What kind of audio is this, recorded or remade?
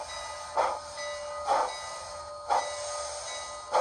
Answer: recorded